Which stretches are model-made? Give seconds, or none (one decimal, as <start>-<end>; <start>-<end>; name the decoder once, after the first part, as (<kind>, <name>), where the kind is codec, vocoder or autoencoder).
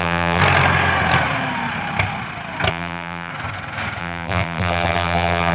0.0-0.4 (vocoder, BigVGAN v2); 2.7-3.3; 4.0-5.5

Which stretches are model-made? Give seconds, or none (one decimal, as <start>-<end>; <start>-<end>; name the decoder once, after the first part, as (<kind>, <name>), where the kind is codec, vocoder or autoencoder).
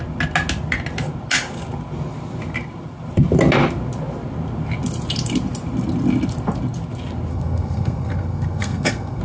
7.3-9.2 (codec, SNAC)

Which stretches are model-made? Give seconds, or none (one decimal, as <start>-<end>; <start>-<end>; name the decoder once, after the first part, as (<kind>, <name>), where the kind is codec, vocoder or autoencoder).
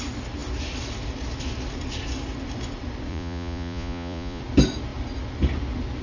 3.1-4.4 (vocoder, Vocos)